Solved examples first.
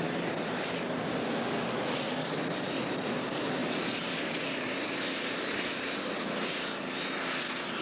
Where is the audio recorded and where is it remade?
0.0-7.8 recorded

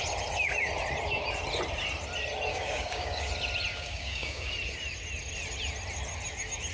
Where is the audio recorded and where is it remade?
0.0-2.5 recorded; 2.5-3.3 remade; 3.3-3.7 recorded; 3.7-4.5 remade; 4.5-6.7 recorded

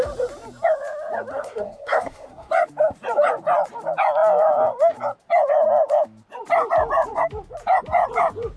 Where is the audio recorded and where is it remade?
0.0-1.3 recorded; 1.3-2.5 remade; 2.5-8.6 recorded

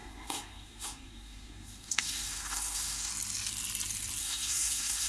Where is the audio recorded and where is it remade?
0.0-3.1 remade; 3.1-4.2 recorded; 4.2-5.1 remade